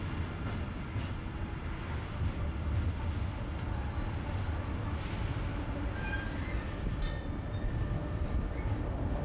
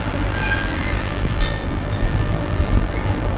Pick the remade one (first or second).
second